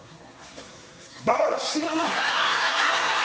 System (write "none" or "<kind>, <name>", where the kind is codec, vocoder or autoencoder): codec, SNAC